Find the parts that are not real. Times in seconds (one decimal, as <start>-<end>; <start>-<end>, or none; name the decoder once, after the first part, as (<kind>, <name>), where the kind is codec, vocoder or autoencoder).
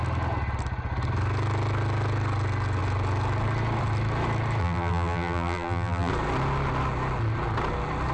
4.6-6.1 (vocoder, BigVGAN v2)